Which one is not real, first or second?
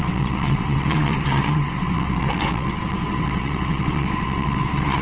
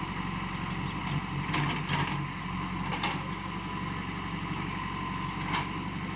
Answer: first